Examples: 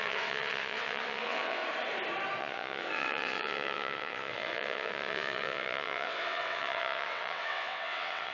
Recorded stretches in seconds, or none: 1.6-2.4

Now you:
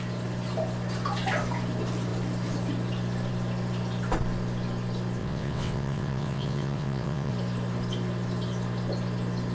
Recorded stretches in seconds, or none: 0.0-5.2; 7.3-9.5

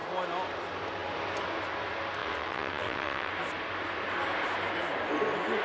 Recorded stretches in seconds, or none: 0.0-2.2; 3.3-5.6

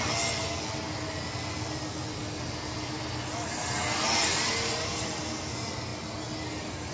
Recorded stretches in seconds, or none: 0.0-6.9

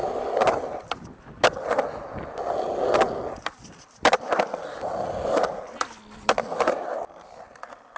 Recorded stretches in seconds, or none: 0.0-8.0

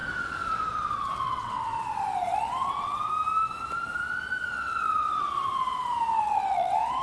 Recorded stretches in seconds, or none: 0.0-1.0; 1.7-2.3; 3.1-4.5; 5.5-6.1

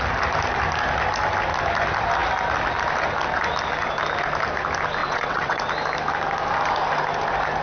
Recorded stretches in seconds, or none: 0.0-5.0; 5.6-7.6

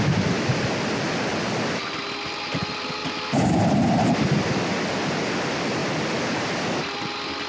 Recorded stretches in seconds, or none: 0.0-7.5